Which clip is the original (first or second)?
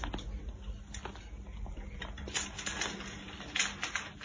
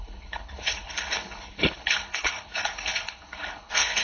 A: first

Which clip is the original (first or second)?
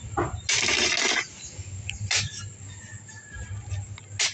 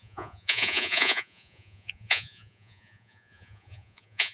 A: first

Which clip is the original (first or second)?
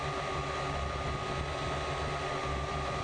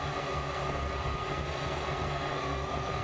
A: first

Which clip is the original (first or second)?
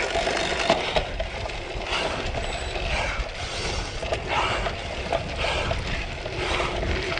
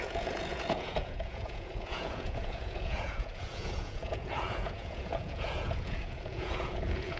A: first